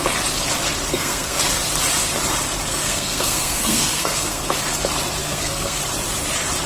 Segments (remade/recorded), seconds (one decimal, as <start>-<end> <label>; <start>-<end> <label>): 0.0-0.9 recorded; 0.9-1.4 remade; 1.4-2.7 recorded; 2.7-4.4 remade; 4.4-5.2 recorded; 5.2-5.8 remade; 5.8-6.7 recorded